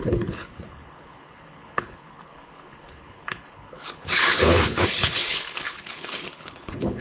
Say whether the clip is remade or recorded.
remade